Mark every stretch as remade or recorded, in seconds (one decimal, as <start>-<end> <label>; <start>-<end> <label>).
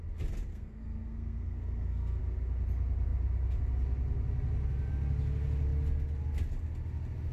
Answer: 0.0-0.5 recorded; 0.5-2.2 remade; 2.2-7.3 recorded